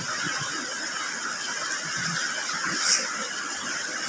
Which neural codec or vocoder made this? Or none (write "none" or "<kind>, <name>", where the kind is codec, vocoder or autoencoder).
none